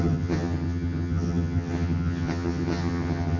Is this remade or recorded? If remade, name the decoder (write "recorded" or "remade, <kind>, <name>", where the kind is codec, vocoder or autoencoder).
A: remade, vocoder, HiFi-GAN